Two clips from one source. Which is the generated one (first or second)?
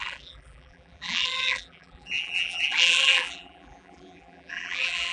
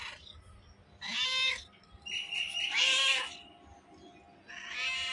first